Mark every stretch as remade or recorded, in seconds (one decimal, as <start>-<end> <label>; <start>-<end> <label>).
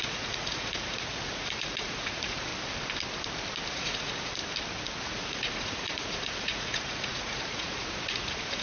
0.0-2.5 remade; 2.5-3.7 recorded; 3.7-4.4 remade; 4.4-5.0 recorded; 5.0-8.6 remade